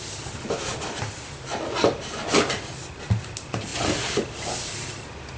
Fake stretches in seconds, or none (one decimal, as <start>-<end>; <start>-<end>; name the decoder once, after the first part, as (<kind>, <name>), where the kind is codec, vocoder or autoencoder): none